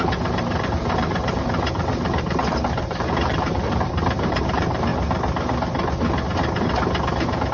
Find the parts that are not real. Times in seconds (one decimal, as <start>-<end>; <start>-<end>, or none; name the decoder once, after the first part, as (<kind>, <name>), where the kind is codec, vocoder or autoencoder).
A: 0.0-4.9 (vocoder, BigVGAN v2)